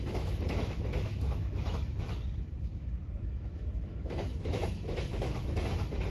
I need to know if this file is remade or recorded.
remade